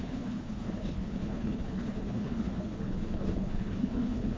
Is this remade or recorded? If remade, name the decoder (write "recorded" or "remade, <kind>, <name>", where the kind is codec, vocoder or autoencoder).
remade, codec, HILCodec